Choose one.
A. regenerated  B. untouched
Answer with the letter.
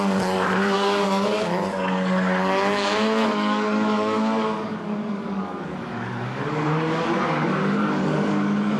A